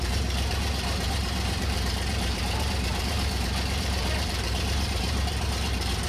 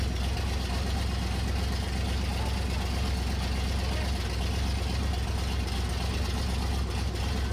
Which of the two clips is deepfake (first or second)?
first